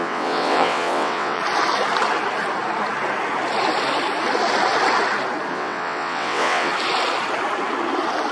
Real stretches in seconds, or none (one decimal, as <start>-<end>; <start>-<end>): 1.4-5.5; 6.7-8.3